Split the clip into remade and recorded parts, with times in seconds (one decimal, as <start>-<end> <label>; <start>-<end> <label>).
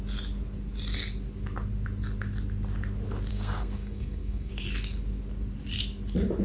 0.0-3.3 recorded; 3.3-4.5 remade; 4.5-6.4 recorded